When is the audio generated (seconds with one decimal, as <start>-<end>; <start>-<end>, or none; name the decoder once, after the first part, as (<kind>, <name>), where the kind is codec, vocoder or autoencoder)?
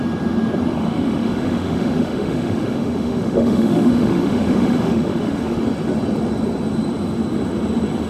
0.7-5.6 (autoencoder, DAC-VAE)